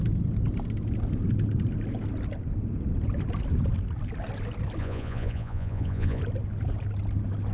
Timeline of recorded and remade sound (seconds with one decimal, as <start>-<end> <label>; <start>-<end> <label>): 0.0-4.8 recorded; 4.8-6.2 remade; 6.2-7.5 recorded